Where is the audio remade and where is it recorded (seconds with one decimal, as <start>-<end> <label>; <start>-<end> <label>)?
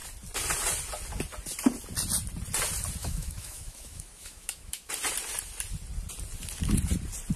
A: 0.0-3.0 recorded; 3.0-4.9 remade; 4.9-7.4 recorded